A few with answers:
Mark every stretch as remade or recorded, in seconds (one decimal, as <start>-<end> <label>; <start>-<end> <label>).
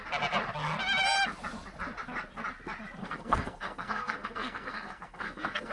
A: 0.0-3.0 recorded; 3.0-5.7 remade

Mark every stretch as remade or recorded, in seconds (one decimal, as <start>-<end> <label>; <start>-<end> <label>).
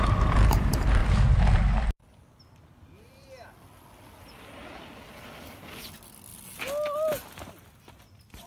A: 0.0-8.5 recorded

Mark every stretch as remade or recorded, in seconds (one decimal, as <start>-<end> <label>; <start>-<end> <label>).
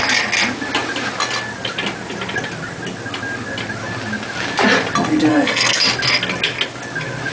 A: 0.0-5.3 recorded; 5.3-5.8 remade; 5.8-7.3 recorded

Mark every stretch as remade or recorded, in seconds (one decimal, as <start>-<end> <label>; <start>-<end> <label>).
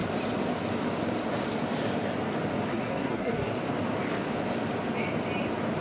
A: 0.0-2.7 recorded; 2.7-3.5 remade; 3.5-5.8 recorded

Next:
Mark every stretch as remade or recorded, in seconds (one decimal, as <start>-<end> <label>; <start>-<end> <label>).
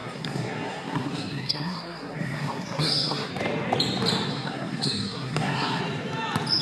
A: 0.0-3.3 remade; 3.3-4.3 recorded; 4.3-5.8 remade; 5.8-6.6 recorded